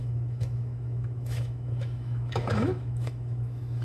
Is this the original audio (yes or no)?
no